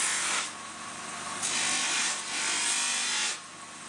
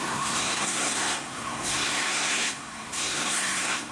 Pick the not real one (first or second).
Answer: second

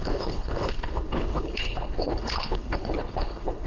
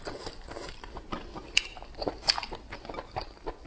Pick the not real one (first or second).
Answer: first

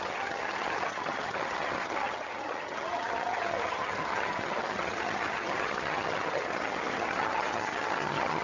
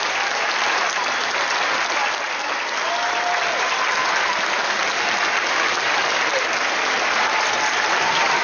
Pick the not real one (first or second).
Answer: first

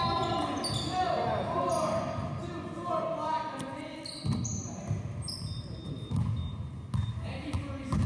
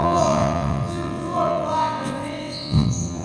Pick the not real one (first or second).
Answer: second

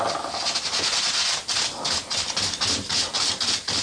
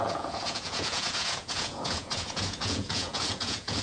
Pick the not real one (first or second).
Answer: second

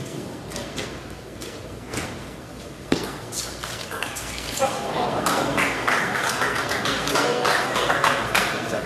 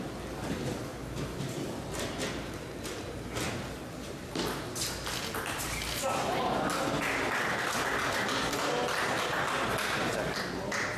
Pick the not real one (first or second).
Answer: first